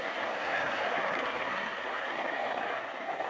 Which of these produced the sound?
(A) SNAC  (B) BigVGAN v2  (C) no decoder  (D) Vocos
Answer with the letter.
A